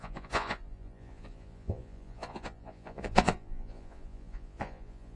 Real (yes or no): no